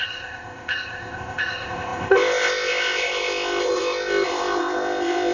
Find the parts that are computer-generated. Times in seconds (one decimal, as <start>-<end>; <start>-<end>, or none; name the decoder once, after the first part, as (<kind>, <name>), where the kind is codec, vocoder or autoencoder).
0.0-5.3 (codec, ZipCodec)